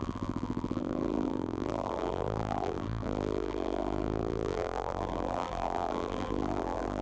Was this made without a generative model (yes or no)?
no